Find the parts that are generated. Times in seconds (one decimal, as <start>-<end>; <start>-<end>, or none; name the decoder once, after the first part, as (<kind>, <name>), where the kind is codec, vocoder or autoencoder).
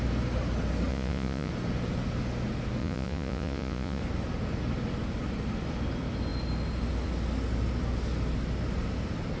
0.9-1.5 (vocoder, Vocos); 2.8-4.0